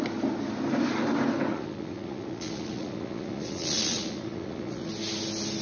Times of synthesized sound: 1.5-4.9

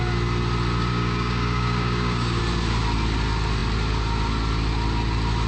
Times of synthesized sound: 0.9-2.4

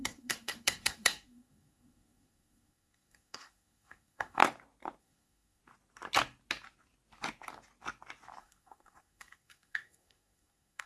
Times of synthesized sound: 0.0-4.4; 5.0-5.6; 8.4-10.9